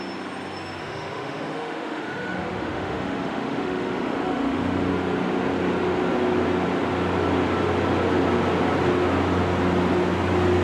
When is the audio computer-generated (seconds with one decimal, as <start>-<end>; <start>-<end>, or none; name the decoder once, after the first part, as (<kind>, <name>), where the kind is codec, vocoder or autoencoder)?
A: 0.8-4.9 (autoencoder, DAC-VAE)